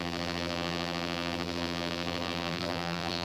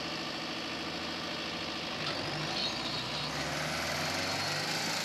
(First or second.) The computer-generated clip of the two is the first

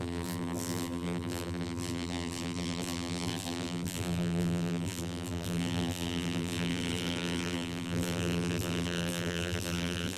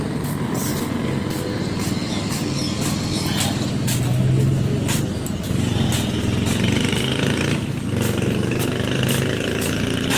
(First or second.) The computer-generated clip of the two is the first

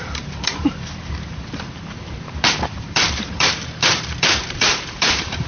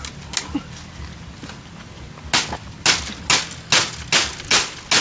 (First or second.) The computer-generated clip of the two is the first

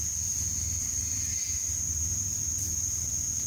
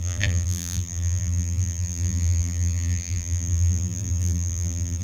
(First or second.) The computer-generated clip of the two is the second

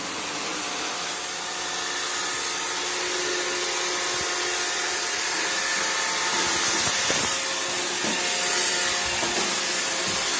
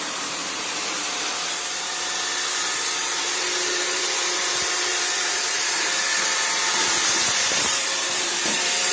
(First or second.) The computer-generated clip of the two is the second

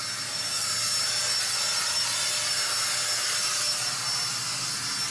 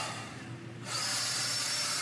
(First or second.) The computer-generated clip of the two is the second